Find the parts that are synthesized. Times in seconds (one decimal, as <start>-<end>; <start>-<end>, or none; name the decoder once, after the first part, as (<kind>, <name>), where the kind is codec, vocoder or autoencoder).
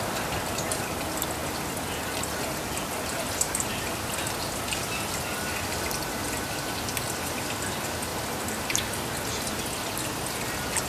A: 8.1-8.8 (vocoder, BigVGAN v2)